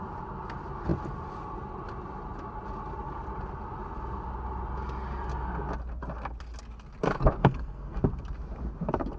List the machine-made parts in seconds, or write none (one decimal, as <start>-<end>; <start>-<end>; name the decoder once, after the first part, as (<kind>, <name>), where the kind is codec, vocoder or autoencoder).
7.4-8.0 (codec, SNAC)